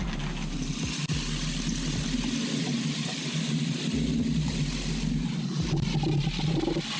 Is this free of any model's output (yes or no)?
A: yes